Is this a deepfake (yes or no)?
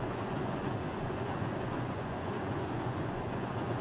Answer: yes